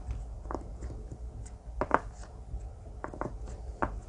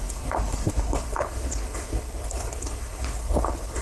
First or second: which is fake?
second